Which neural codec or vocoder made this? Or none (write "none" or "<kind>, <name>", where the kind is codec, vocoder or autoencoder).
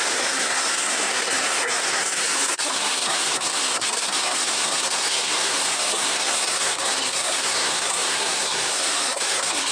codec, SNAC